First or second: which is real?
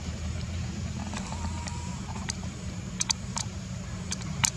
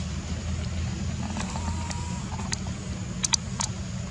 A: second